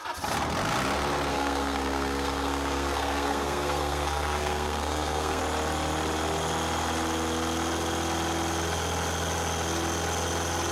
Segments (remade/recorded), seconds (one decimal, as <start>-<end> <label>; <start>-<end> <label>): 0.0-1.3 recorded; 1.3-5.4 remade; 5.4-10.7 recorded